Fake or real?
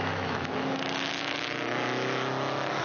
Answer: fake